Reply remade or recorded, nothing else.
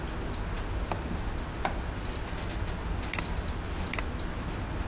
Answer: recorded